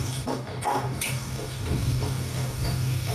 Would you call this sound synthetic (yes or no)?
yes